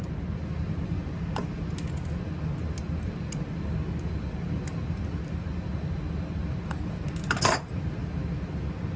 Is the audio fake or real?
real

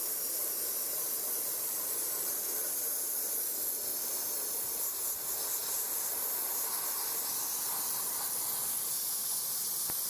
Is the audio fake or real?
real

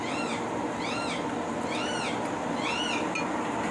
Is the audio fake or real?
real